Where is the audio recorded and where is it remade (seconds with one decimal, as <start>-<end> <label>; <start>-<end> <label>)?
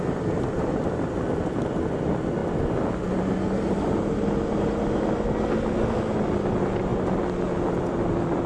0.0-8.5 recorded